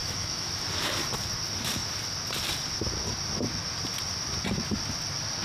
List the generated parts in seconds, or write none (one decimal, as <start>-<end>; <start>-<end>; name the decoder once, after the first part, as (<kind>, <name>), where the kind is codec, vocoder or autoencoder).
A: 0.0-0.5 (autoencoder, DAC-VAE)